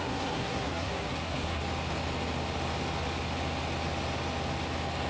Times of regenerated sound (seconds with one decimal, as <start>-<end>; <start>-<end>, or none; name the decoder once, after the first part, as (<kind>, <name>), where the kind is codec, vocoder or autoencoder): 0.0-1.6 (codec, SNAC)